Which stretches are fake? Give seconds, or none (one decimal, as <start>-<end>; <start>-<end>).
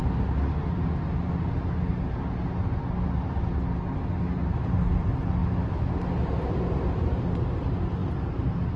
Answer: 5.4-6.0